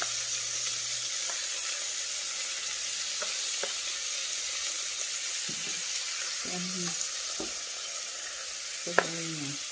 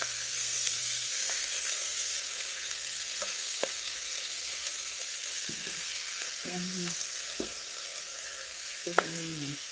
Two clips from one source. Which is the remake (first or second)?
second